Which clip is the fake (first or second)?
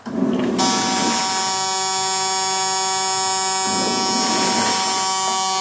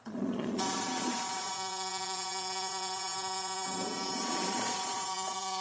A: second